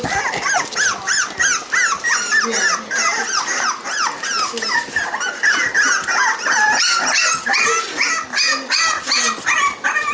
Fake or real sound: real